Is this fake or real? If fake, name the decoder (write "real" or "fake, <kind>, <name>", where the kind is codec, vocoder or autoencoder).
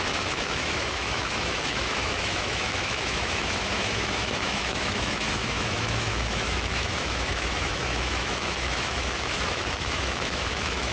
fake, autoencoder, DAC-VAE